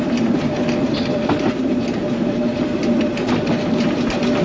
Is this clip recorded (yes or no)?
yes